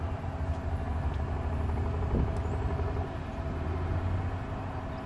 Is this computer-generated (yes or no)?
no